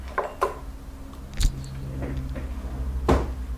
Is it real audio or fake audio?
real